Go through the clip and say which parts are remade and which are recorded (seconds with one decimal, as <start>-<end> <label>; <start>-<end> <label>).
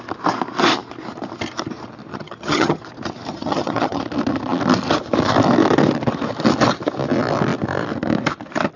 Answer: 0.0-2.1 recorded; 2.1-2.8 remade; 2.8-3.3 recorded; 3.3-4.0 remade; 4.0-8.8 recorded